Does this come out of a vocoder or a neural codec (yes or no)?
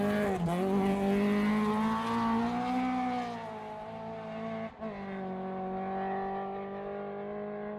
no